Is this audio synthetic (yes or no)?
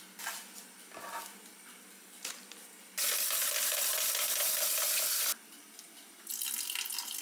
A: no